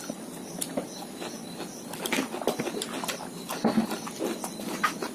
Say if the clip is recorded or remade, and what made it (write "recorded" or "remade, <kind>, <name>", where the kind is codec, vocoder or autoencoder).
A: recorded